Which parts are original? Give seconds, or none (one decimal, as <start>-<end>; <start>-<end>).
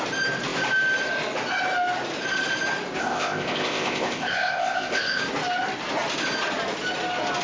0.0-3.0; 5.2-7.4